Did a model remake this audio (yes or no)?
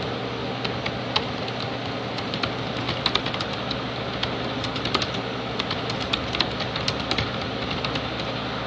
no